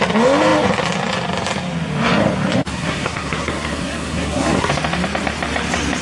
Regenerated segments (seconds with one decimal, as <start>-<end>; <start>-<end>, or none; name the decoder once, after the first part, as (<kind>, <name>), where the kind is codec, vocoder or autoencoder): 2.7-4.7 (codec, SNAC)